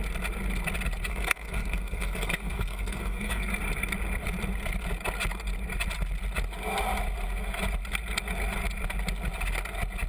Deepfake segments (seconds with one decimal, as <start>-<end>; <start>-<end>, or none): 1.1-3.5

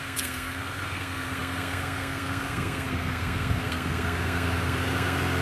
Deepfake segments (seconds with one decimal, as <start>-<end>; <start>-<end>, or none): 0.0-5.4

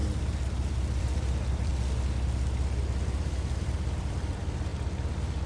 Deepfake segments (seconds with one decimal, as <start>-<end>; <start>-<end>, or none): 1.0-1.7; 3.6-5.5

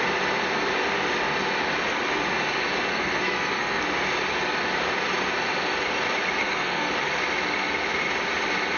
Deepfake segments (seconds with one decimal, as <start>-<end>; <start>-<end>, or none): 2.9-3.8; 6.4-6.9

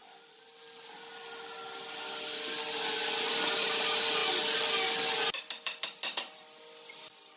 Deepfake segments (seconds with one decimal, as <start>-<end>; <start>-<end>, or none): none

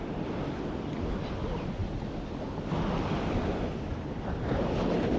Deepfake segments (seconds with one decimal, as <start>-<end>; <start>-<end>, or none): none